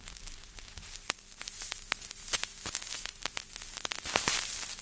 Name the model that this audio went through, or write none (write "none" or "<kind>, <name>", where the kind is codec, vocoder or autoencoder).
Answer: none